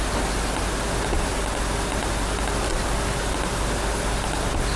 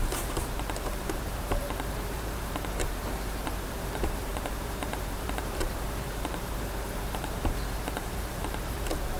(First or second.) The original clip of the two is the first